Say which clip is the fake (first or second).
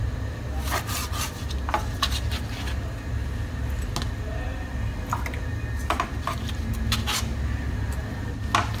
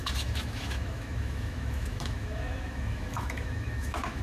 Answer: second